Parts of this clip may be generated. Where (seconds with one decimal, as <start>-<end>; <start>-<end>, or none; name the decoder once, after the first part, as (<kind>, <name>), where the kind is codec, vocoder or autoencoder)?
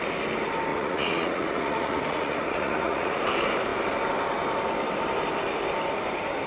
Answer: 0.7-3.2 (vocoder, Vocos)